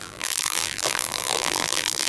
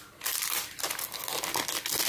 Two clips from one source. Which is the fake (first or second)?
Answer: first